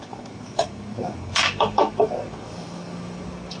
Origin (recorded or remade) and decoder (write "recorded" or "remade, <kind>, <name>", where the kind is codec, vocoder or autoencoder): remade, codec, DAC